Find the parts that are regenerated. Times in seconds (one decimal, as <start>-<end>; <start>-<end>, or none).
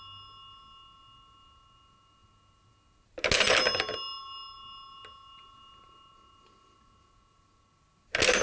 none